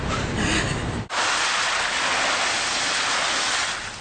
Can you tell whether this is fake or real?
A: real